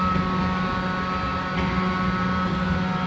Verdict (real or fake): real